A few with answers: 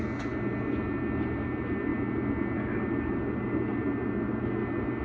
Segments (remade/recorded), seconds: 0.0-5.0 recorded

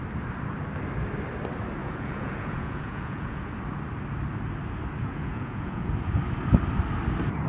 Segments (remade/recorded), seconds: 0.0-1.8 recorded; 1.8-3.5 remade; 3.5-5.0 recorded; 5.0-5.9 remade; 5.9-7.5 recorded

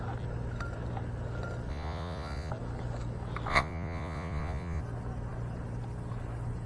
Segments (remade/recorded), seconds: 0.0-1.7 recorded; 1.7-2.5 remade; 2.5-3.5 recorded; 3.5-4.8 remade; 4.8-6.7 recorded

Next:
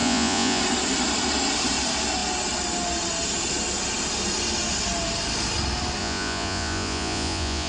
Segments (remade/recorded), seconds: 0.0-0.6 remade; 0.6-6.0 recorded; 6.0-7.7 remade

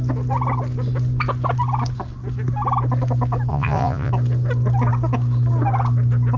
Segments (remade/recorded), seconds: 0.0-3.5 recorded; 3.5-4.1 remade; 4.1-6.4 recorded